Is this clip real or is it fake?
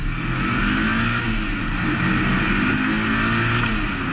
real